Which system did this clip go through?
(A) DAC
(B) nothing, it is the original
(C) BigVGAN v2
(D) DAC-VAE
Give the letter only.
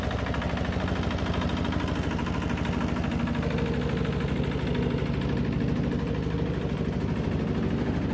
B